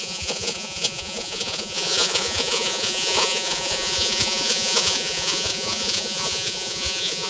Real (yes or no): no